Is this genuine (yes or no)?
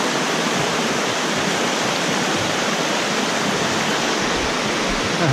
yes